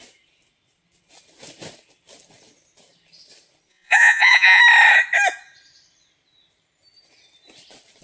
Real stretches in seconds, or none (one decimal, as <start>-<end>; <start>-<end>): 0.0-3.7; 4.6-8.0